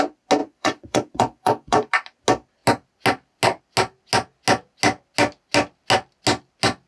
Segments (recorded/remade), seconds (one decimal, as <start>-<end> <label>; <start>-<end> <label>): 0.0-0.4 recorded; 0.4-1.9 remade; 1.9-6.9 recorded